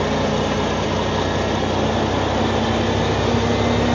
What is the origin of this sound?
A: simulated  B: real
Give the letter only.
B